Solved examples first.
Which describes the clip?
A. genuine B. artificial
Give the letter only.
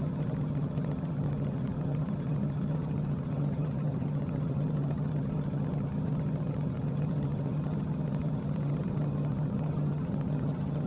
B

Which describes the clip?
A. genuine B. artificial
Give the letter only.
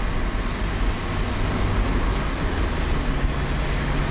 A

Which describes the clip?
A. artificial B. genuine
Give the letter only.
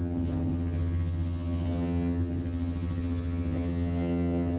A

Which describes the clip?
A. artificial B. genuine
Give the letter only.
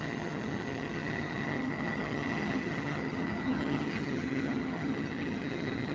A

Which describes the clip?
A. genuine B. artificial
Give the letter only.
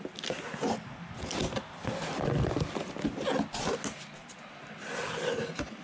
A